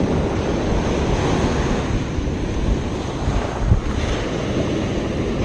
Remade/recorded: recorded